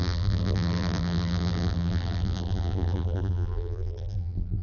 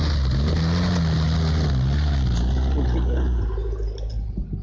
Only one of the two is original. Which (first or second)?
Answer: second